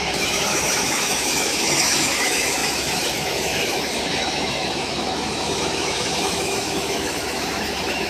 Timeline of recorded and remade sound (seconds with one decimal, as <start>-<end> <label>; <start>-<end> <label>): 0.0-8.1 remade